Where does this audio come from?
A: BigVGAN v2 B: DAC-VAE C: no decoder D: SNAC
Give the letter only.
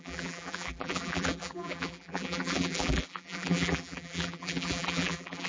A